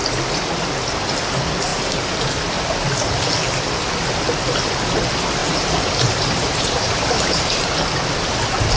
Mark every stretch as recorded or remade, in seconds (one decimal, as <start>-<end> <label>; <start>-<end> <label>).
0.0-1.7 recorded; 1.7-2.3 remade; 2.3-5.4 recorded; 5.4-7.6 remade; 7.6-8.8 recorded